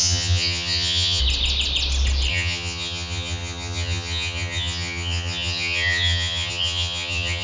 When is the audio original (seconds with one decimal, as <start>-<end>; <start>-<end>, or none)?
1.2-2.3